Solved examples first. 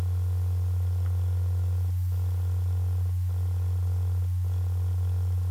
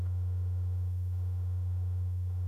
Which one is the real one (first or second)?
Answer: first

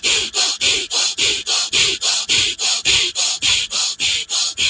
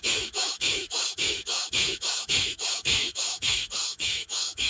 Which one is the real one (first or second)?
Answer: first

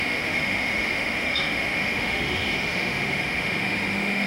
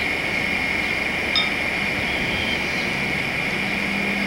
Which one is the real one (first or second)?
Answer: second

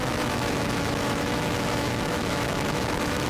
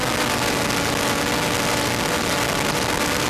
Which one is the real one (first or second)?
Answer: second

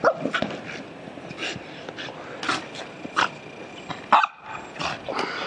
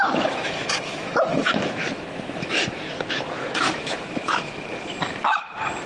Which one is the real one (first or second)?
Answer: first